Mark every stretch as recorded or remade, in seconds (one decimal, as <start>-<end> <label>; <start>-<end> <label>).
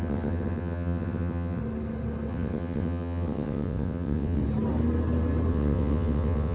0.0-1.6 remade; 1.6-2.3 recorded; 2.3-4.4 remade; 4.4-5.5 recorded; 5.5-6.5 remade